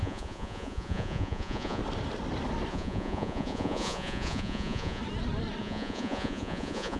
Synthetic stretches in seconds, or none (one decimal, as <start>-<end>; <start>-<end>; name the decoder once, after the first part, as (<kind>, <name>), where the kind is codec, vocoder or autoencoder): 0.0-1.8 (vocoder, Vocos); 2.7-5.0; 5.6-7.0